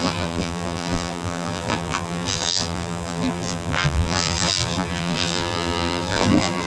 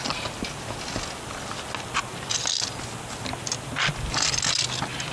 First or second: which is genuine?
second